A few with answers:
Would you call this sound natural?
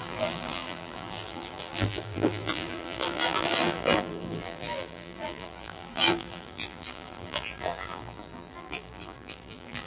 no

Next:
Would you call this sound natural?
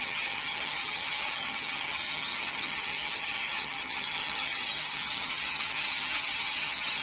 no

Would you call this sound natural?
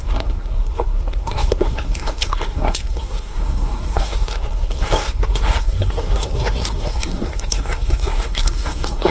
no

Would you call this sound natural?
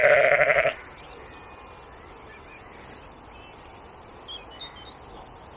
yes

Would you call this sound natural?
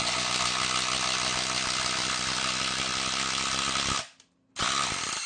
yes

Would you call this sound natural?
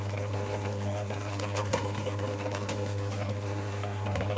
no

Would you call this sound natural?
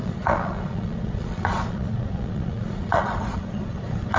no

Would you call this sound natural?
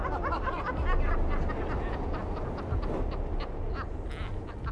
yes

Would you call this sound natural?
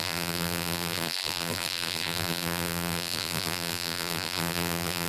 no